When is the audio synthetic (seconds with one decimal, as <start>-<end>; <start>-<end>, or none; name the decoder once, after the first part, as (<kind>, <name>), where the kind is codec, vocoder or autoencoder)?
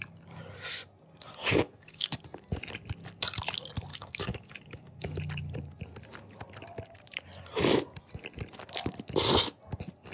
1.4-2.2 (codec, DAC); 3.9-5.2